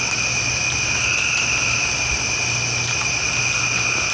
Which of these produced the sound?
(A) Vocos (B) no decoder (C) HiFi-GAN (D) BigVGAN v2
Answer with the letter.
B